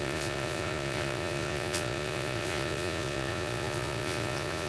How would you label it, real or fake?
fake